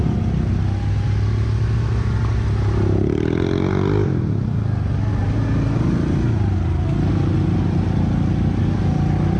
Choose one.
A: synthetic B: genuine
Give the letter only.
B